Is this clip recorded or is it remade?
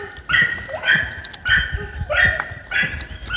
recorded